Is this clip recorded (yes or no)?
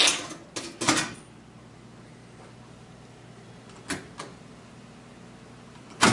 yes